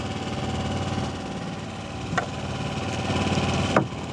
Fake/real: real